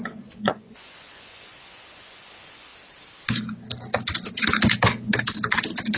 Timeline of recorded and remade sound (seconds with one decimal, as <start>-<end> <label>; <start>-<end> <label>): 0.0-2.7 remade; 2.7-6.0 recorded